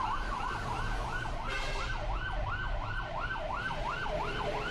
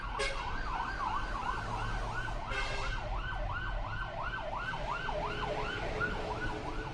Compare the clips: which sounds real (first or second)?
second